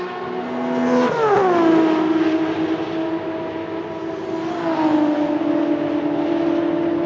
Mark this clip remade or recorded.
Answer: recorded